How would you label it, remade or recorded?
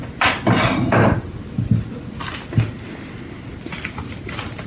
recorded